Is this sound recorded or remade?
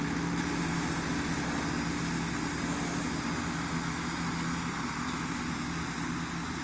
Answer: recorded